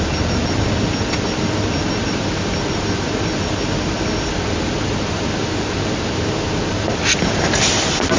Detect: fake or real real